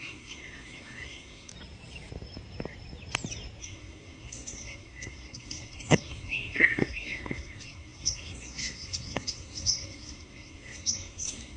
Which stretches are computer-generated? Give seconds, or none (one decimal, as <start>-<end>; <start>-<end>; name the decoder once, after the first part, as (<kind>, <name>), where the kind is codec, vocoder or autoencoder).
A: 0.0-1.5 (codec, SNAC); 3.6-11.6